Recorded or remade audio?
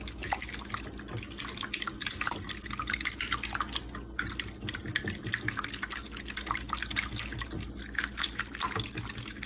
recorded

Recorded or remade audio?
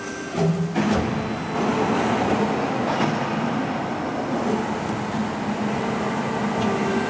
recorded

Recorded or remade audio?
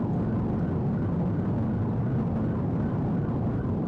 recorded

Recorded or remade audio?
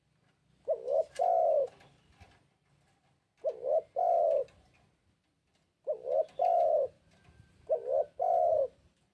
recorded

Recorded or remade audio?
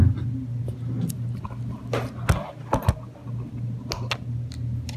recorded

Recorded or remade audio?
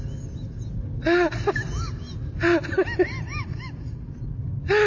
recorded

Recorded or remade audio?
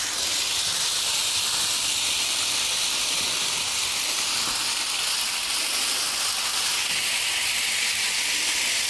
recorded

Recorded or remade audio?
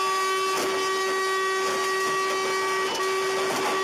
recorded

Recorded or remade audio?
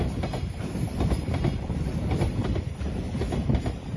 remade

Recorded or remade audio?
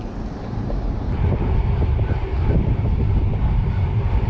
remade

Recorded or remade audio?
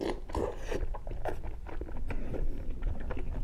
recorded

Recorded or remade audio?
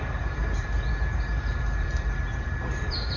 remade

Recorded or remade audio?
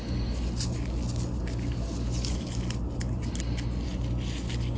recorded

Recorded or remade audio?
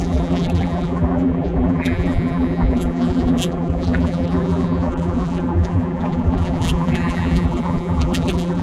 remade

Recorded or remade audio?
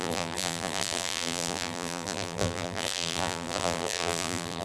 remade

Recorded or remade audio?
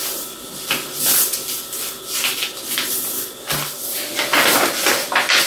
recorded